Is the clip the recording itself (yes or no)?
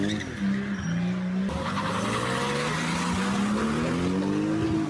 yes